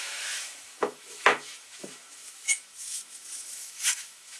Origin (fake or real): fake